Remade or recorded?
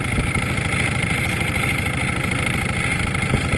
recorded